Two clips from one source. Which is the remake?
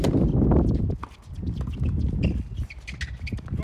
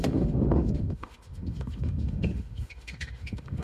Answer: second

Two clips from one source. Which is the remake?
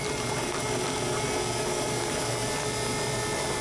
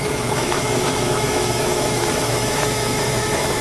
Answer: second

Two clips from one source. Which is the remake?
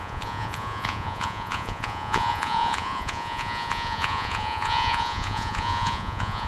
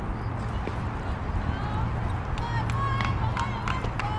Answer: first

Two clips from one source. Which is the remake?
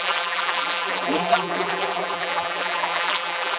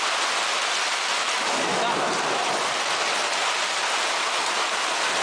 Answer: first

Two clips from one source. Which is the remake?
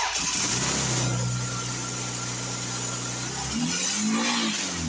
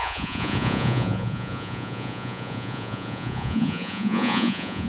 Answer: second